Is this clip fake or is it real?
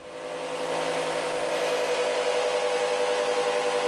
real